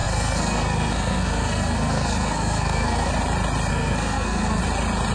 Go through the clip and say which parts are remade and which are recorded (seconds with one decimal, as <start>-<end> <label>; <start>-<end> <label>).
0.0-3.1 remade; 3.1-3.7 recorded; 3.7-4.6 remade; 4.6-5.1 recorded